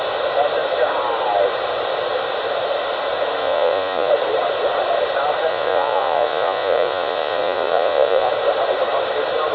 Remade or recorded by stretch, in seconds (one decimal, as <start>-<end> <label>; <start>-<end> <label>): 0.0-3.4 recorded; 3.4-4.1 remade; 4.1-5.5 recorded; 5.5-8.3 remade; 8.3-9.5 recorded